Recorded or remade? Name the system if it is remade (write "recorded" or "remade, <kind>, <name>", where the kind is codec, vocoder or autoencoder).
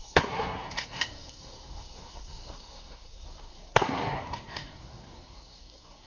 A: remade, codec, SNAC